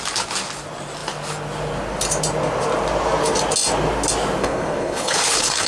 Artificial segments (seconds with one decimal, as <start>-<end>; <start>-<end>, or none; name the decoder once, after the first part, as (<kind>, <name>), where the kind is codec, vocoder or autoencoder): 4.4-5.7 (codec, HILCodec)